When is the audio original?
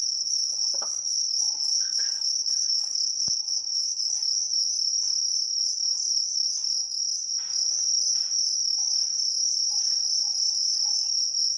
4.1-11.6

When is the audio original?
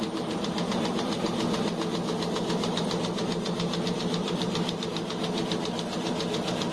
1.3-3.9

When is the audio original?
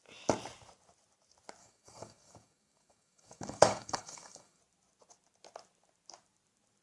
0.0-1.6; 4.6-6.8